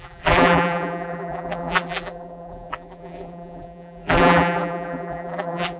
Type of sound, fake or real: fake